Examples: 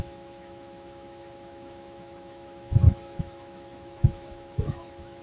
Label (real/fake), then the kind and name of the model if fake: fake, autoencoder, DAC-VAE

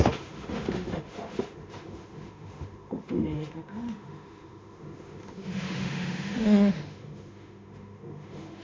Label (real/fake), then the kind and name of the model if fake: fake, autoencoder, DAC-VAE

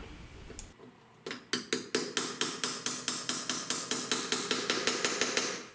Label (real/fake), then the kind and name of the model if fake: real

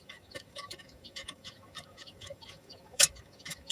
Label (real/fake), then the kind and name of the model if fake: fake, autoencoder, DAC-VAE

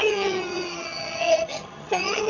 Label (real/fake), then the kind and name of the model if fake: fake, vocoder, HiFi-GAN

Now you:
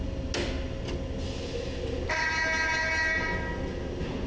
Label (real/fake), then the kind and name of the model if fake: real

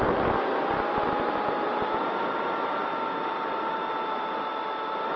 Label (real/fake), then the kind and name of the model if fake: real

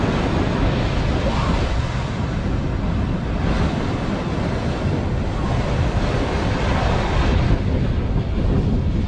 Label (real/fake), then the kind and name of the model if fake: real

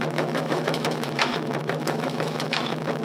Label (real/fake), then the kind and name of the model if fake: fake, autoencoder, DAC-VAE